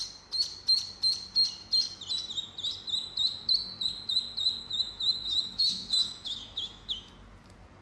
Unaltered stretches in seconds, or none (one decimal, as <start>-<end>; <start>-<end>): 0.0-4.6; 7.1-7.8